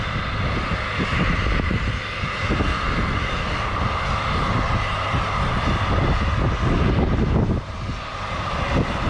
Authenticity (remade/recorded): recorded